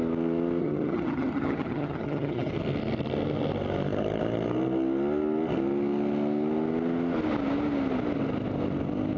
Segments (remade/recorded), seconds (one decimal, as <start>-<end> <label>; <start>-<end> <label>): 0.0-0.6 recorded; 0.6-2.5 remade; 2.5-9.2 recorded